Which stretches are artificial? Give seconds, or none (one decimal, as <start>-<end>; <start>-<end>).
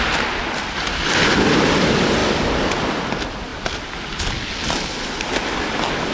none